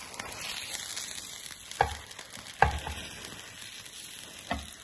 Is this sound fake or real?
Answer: real